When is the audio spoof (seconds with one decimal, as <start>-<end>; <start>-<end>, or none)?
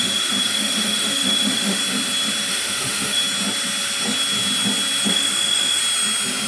0.0-1.8; 2.5-3.2; 5.1-5.8